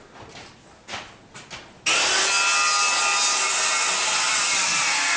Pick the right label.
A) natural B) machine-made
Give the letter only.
A